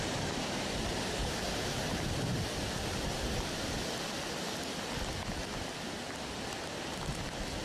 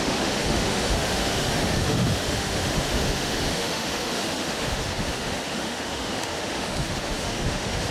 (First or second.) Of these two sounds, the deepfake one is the second